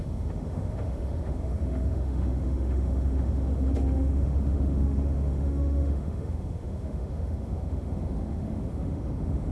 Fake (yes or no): yes